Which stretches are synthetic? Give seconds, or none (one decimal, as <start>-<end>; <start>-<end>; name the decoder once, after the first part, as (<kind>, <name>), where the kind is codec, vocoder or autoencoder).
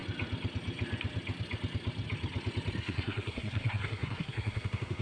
2.8-5.0 (codec, SNAC)